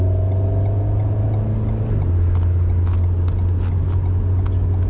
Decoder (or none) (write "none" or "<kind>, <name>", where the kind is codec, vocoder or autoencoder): none